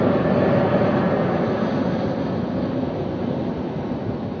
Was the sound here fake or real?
real